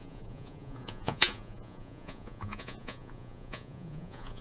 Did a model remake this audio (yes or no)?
yes